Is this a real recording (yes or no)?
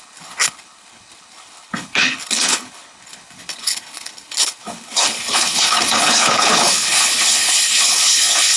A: no